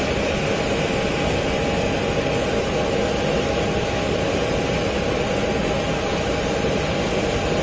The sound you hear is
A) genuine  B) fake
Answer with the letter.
A